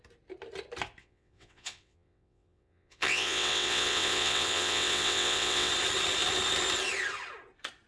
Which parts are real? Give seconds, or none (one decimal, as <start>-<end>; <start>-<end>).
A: 0.0-1.0; 5.7-7.9